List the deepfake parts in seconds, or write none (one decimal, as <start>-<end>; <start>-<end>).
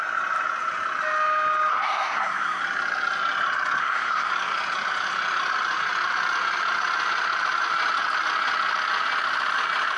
1.7-2.6; 3.8-4.3